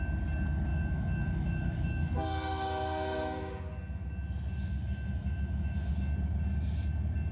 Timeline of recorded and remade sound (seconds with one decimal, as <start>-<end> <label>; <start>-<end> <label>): 0.0-0.7 recorded; 0.7-2.1 remade; 2.1-4.8 recorded; 4.8-5.9 remade; 5.9-7.3 recorded